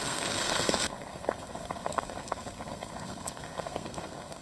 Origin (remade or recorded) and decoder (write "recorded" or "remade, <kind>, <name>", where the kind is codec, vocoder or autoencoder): remade, codec, SNAC